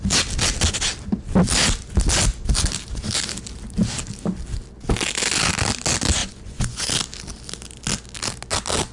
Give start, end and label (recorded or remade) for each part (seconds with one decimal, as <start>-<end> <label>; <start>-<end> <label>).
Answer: 0.0-6.2 recorded; 6.2-6.9 remade; 6.9-8.9 recorded